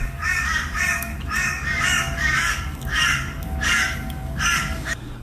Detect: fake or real fake